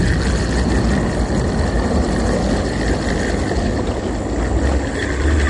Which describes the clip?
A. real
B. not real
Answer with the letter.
A